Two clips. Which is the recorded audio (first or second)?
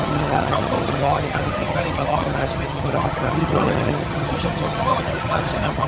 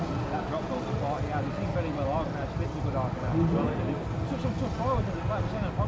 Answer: second